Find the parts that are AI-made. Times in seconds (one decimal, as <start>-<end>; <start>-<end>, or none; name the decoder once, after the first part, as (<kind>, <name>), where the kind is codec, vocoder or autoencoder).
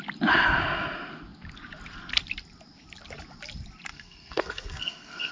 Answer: 3.9-5.3 (codec, SNAC)